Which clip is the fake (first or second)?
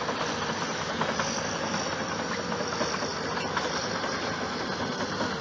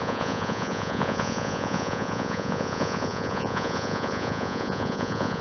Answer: second